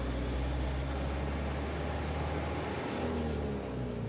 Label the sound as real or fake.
real